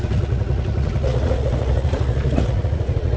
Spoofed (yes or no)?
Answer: yes